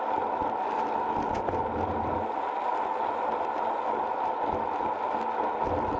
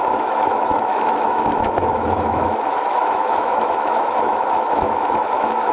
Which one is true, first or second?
first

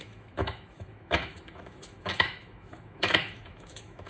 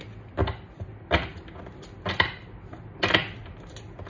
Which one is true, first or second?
second